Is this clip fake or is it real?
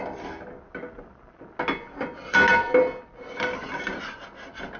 real